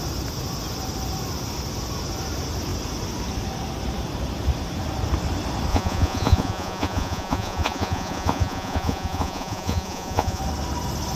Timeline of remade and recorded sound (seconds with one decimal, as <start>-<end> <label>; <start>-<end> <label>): 0.0-5.7 recorded; 5.7-10.4 remade; 10.4-11.2 recorded